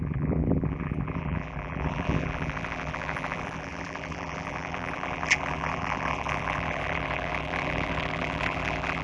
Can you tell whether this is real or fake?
fake